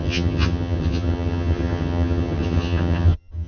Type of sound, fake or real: fake